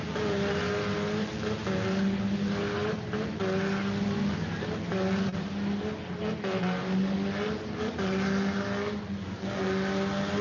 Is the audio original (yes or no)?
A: yes